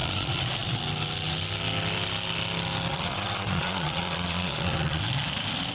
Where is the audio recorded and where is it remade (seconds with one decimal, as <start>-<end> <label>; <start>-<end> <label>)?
0.0-0.8 remade; 0.8-2.9 recorded; 2.9-5.0 remade; 5.0-5.7 recorded